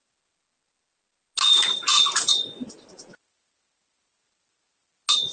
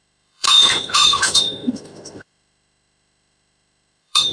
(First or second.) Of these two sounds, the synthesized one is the second